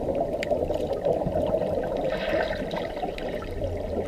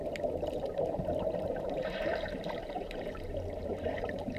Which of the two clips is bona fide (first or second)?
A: first